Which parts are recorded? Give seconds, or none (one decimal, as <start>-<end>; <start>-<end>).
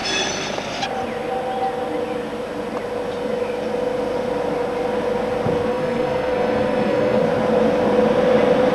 0.0-5.7; 7.2-8.7